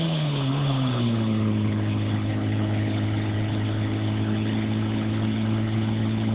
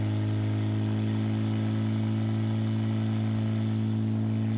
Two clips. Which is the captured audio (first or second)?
second